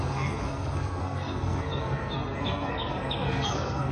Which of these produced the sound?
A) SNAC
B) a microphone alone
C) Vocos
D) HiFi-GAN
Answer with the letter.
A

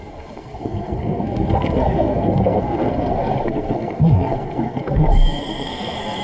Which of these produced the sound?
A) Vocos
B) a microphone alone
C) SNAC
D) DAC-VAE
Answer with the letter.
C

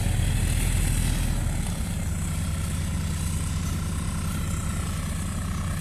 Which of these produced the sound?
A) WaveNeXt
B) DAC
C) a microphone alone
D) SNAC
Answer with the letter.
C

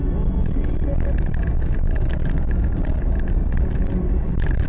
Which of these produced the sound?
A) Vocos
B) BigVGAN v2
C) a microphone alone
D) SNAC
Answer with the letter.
C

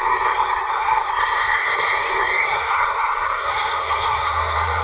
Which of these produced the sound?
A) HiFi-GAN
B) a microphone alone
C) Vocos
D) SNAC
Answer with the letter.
D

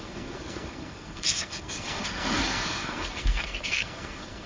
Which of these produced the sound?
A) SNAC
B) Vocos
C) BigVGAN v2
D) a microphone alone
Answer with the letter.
A